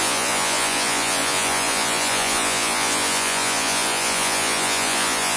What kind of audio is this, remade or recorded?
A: remade